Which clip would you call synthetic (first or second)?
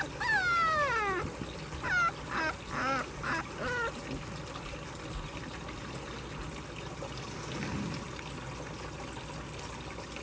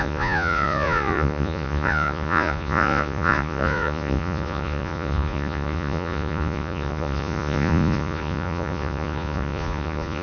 second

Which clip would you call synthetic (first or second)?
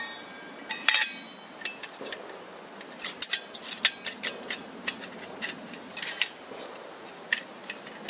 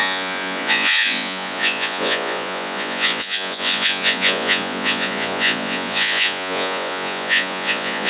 second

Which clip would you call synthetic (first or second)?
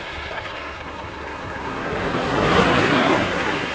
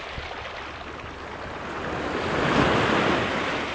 first